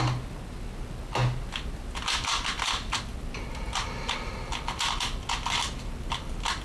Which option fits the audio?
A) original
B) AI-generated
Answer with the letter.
A